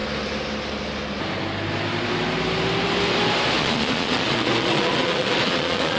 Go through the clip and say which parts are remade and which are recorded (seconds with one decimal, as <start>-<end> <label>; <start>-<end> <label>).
0.0-3.6 recorded; 3.6-6.0 remade